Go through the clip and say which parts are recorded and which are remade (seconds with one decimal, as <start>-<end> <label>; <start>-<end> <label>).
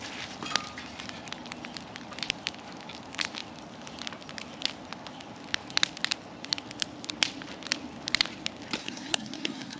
0.0-8.8 recorded; 8.8-9.8 remade